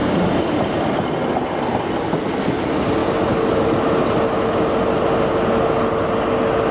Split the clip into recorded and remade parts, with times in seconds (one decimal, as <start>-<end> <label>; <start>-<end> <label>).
0.0-6.7 recorded